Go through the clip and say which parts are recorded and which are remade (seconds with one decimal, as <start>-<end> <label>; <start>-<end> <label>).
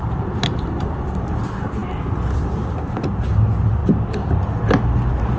0.0-1.4 remade; 1.4-5.4 recorded